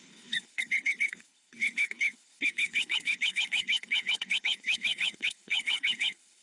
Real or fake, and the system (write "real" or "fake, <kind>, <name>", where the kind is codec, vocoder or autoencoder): fake, codec, HILCodec